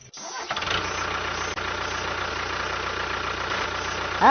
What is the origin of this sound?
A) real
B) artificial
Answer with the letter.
A